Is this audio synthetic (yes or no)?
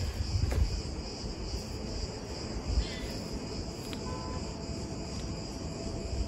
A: no